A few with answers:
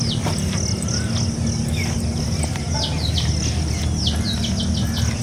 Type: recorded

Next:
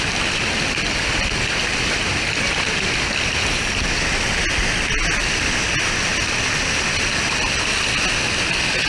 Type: recorded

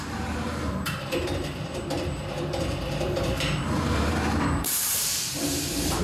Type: remade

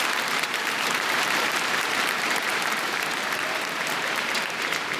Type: remade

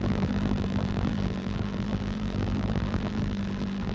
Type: remade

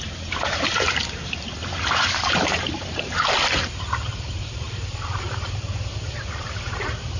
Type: remade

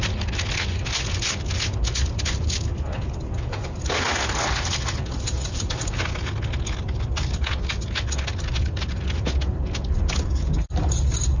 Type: recorded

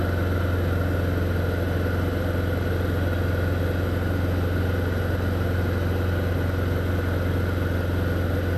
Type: recorded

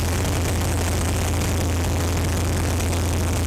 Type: recorded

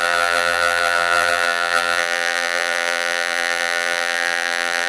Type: remade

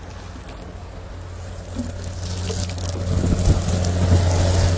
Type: recorded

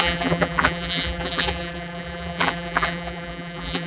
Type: remade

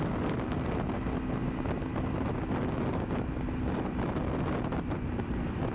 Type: recorded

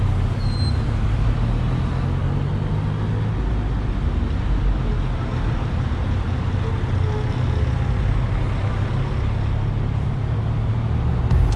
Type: recorded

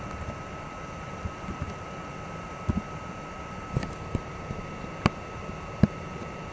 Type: remade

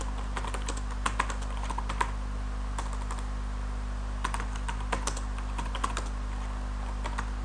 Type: recorded